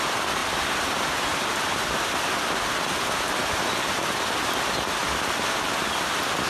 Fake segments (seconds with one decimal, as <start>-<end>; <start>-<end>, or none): none